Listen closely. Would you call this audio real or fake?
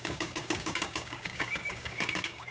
fake